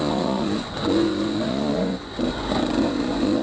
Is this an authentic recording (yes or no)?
no